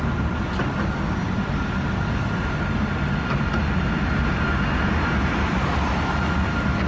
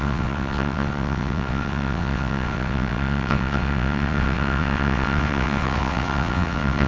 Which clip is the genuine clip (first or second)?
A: first